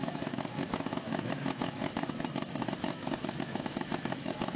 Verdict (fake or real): fake